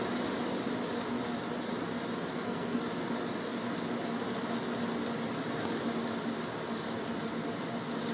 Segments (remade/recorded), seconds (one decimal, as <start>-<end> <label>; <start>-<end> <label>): 0.0-2.3 recorded; 2.3-2.8 remade; 2.8-8.1 recorded